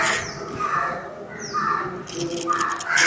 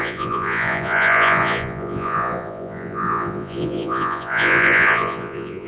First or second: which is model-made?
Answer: second